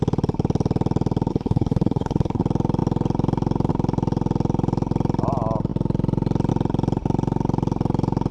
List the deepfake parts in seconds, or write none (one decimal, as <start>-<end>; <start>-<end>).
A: 1.3-2.4